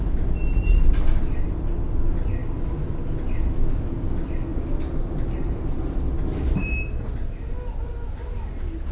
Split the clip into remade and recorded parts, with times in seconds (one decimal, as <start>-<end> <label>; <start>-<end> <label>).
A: 0.0-4.5 recorded; 4.5-6.7 remade; 6.7-8.9 recorded